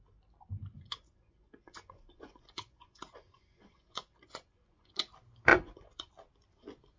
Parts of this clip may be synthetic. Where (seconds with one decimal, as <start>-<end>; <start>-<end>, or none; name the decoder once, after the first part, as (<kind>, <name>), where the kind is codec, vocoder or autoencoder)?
0.7-4.9 (vocoder, Vocos); 5.5-6.1